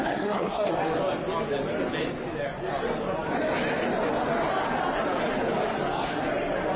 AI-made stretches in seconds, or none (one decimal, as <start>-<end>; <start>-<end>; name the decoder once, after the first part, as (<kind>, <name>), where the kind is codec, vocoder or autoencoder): 0.0-0.7 (codec, SNAC)